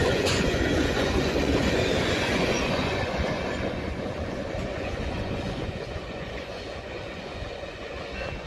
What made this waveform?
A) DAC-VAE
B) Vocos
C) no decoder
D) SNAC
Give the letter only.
B